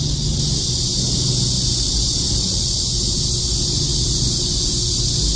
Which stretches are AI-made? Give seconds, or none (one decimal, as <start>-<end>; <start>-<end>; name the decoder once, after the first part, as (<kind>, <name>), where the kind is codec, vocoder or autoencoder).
none